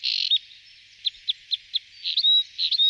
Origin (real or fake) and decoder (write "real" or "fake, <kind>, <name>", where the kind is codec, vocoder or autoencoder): real